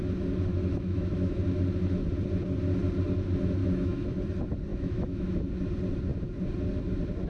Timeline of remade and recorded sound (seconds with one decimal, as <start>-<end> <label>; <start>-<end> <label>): 0.0-0.5 recorded; 0.5-1.4 remade; 1.4-3.6 recorded; 3.6-4.2 remade; 4.2-4.7 recorded; 4.7-5.4 remade; 5.4-7.3 recorded